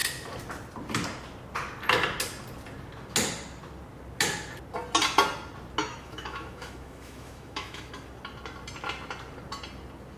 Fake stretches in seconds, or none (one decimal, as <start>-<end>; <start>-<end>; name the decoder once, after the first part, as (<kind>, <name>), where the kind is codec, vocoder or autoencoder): 5.8-7.9 (autoencoder, DAC-VAE)